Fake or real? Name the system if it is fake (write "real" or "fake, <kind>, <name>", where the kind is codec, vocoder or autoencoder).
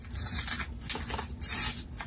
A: real